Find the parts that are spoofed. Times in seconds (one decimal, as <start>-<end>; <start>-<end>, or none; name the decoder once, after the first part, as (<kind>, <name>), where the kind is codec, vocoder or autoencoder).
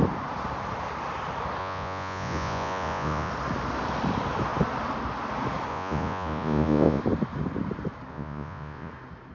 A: 1.6-3.3 (vocoder, Vocos); 5.7-7.0; 8.1-8.9